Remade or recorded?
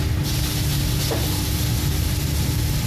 recorded